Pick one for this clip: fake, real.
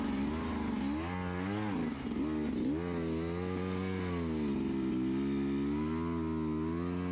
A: real